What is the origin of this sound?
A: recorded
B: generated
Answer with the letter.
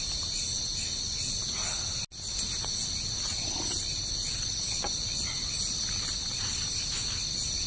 A